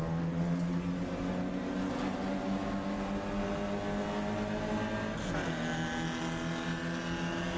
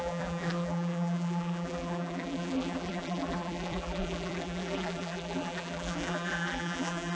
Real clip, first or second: first